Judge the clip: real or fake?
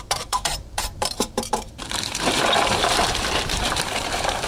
fake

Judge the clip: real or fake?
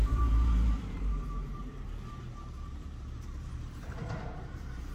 fake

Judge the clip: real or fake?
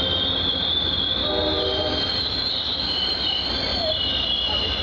fake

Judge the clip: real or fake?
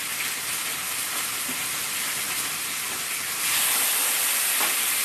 fake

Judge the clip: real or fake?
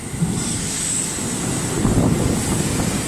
real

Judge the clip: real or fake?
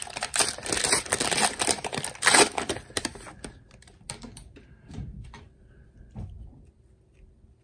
fake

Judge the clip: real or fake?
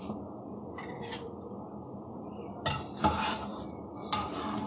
fake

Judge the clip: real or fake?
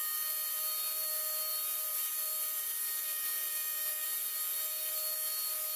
real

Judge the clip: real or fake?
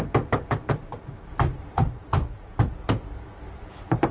fake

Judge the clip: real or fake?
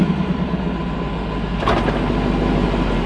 real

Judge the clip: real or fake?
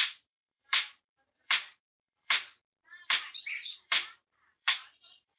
fake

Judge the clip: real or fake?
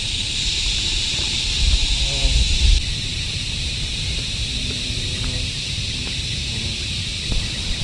fake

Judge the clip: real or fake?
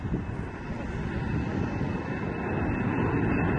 real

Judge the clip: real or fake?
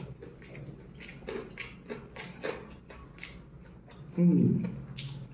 real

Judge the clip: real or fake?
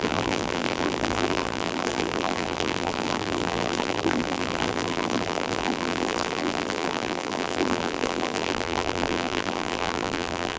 fake